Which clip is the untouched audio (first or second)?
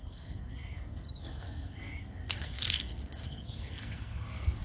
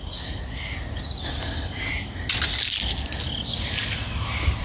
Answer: second